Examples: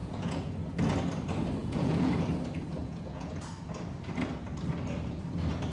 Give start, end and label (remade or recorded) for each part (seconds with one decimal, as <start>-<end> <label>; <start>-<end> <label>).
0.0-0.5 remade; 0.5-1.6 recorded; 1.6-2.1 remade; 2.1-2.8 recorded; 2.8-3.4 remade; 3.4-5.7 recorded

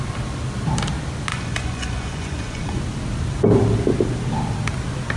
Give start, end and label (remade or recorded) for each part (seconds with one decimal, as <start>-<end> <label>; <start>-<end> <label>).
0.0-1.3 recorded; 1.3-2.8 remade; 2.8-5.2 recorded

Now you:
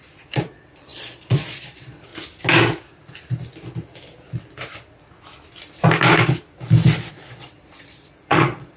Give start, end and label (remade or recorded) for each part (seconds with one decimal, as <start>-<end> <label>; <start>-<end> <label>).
0.0-2.1 remade; 2.1-7.1 recorded; 7.1-8.8 remade

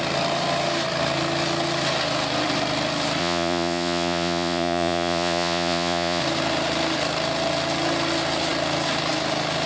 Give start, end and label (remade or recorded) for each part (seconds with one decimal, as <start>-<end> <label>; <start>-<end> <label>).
0.0-3.2 recorded; 3.2-6.2 remade; 6.2-9.7 recorded

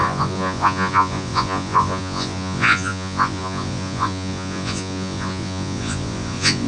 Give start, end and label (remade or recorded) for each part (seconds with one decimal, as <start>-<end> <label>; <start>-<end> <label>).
0.0-6.7 remade

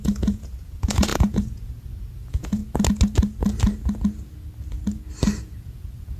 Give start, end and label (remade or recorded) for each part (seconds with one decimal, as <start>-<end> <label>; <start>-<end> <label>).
0.0-2.6 remade; 2.6-5.4 recorded; 5.4-6.2 remade

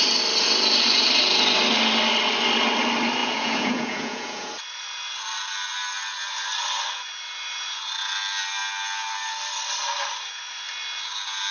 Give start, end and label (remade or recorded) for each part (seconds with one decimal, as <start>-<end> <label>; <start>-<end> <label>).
0.0-3.2 recorded; 3.2-4.5 remade; 4.5-11.5 recorded